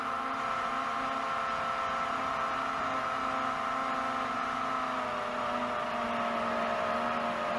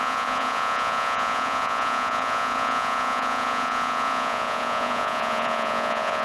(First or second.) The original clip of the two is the first